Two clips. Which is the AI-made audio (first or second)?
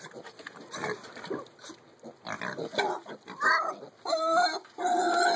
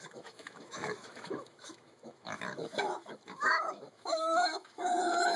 second